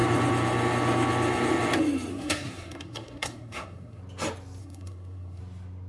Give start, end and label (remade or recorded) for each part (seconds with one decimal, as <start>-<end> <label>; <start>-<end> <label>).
0.0-2.1 recorded; 2.1-4.0 remade; 4.0-4.6 recorded; 4.6-5.4 remade; 5.4-5.9 recorded